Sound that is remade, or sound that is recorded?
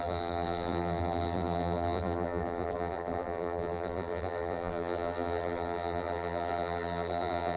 remade